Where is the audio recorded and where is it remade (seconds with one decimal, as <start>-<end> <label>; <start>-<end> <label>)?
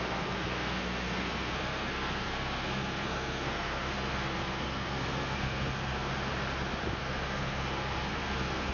0.0-6.1 remade; 6.1-7.0 recorded; 7.0-8.7 remade